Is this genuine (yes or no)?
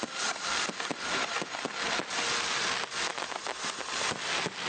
yes